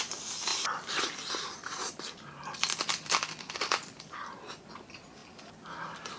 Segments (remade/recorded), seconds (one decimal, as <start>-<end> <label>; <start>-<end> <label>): 0.0-0.5 recorded; 0.5-4.2 remade; 4.2-6.2 recorded